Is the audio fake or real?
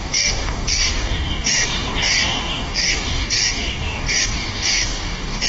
fake